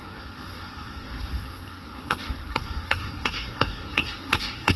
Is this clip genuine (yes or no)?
no